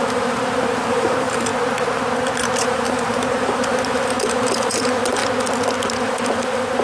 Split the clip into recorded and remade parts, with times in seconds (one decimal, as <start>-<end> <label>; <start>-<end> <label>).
0.0-1.5 remade; 1.5-2.6 recorded; 2.6-5.2 remade; 5.2-5.9 recorded; 5.9-6.8 remade

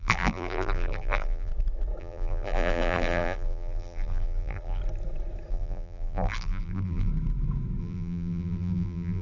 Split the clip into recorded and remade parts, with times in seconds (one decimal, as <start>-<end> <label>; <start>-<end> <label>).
0.0-1.5 remade; 1.5-2.0 recorded; 2.0-4.8 remade; 4.8-5.5 recorded; 5.5-7.1 remade; 7.1-7.8 recorded; 7.8-9.2 remade